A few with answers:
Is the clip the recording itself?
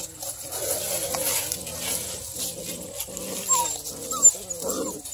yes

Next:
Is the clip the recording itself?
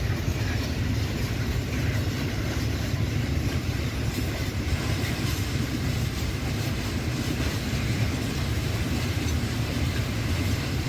no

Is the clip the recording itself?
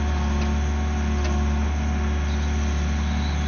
yes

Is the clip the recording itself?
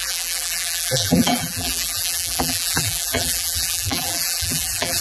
no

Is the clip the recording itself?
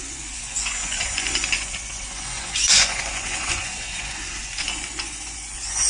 no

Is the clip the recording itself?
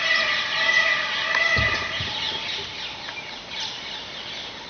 yes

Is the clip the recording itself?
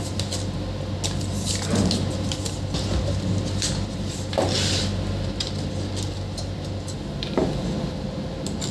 yes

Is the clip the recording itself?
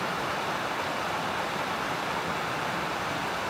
yes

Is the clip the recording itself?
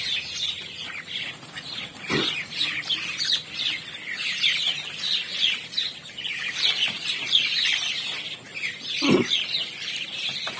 yes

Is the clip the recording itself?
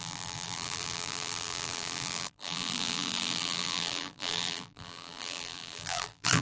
no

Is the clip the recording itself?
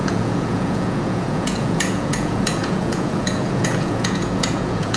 no